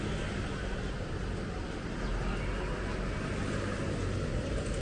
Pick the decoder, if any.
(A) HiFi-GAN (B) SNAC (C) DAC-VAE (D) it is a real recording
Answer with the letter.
D